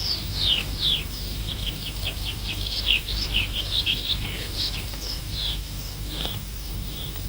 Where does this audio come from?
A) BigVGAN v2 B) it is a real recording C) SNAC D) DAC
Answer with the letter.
D